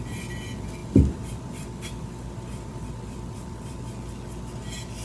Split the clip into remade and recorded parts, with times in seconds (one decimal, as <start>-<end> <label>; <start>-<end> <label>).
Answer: 0.0-0.8 recorded; 0.8-3.8 remade; 3.8-5.0 recorded